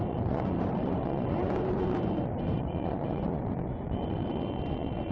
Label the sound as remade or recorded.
remade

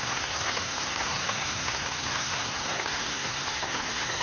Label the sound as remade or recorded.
remade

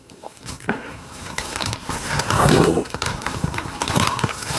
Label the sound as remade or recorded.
remade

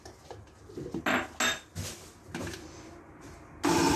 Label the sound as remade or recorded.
recorded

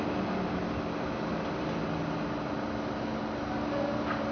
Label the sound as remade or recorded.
recorded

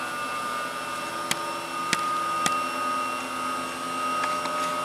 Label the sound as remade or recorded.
recorded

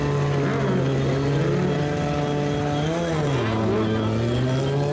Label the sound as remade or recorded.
recorded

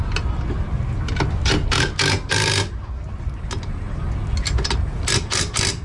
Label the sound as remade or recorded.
recorded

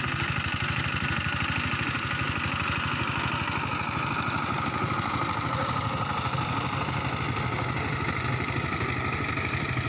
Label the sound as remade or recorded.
recorded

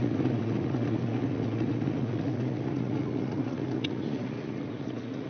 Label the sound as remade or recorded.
remade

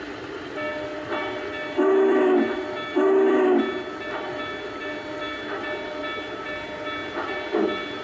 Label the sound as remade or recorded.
recorded